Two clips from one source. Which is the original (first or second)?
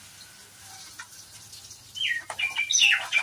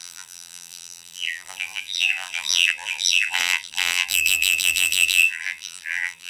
first